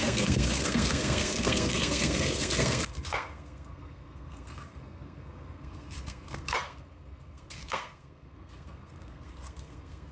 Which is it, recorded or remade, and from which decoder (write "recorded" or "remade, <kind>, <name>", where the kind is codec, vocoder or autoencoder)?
remade, codec, SNAC